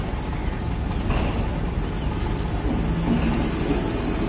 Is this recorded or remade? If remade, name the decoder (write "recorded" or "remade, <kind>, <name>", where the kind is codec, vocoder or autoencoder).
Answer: recorded